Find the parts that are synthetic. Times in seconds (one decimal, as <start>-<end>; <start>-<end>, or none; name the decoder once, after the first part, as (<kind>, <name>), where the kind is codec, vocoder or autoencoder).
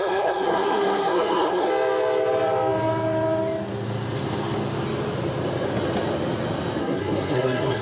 0.0-1.7 (codec, SNAC); 6.8-7.8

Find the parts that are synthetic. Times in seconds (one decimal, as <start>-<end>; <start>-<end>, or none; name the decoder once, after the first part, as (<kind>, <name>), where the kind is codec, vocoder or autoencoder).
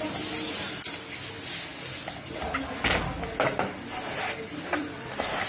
none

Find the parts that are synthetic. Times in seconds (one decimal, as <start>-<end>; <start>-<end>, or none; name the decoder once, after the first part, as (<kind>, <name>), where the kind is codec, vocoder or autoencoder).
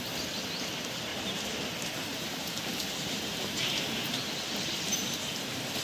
1.1-4.3 (vocoder, BigVGAN v2)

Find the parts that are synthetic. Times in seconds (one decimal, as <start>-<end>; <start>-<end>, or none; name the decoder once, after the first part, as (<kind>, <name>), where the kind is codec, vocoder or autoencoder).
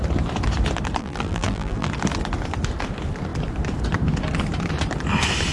1.0-1.9 (vocoder, BigVGAN v2)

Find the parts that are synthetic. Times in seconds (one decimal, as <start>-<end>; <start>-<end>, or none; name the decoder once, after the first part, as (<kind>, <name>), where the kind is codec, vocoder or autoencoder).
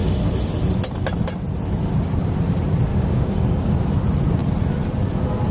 2.9-3.7 (codec, DAC)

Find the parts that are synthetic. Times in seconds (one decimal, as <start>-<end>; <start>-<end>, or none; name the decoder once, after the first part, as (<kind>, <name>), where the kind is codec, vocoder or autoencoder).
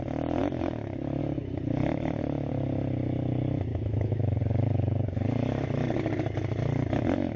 0.4-1.2 (autoencoder, DAC-VAE); 3.7-4.4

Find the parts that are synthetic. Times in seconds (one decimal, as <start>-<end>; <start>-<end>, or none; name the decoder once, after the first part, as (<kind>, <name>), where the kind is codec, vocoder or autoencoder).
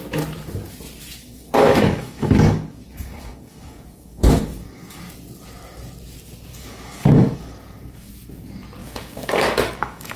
1.2-5.0 (codec, DAC); 6.5-8.1; 8.8-10.2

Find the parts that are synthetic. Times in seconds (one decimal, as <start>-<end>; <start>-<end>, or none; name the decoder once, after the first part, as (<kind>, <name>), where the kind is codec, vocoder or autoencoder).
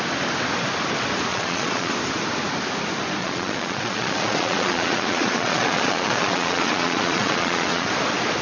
1.3-1.9 (vocoder, Vocos); 3.2-7.9